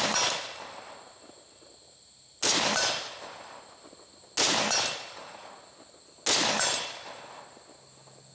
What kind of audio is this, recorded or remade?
recorded